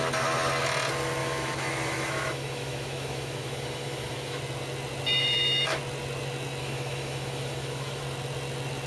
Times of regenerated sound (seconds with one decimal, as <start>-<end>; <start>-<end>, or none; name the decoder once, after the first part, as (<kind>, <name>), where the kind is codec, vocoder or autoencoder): 1.2-4.4 (autoencoder, DAC-VAE); 5.2-5.8; 6.6-8.0